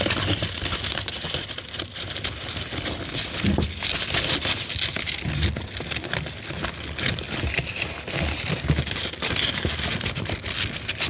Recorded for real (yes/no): yes